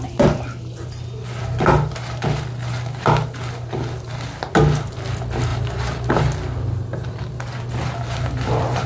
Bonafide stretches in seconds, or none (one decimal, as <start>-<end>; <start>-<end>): 0.0-8.9